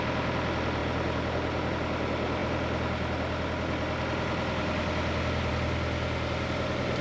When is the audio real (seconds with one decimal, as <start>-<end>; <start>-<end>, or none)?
0.0-7.0